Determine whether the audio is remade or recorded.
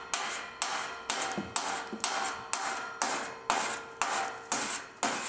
recorded